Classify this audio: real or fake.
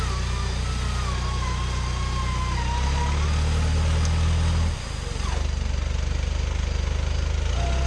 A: real